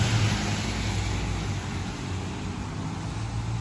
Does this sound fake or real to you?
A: real